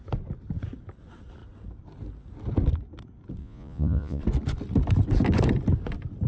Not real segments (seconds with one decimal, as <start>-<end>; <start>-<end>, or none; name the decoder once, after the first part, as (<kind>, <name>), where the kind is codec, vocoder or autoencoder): 3.4-4.2 (vocoder, Vocos)